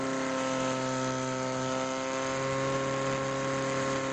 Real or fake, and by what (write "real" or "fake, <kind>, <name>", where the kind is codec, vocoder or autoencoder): real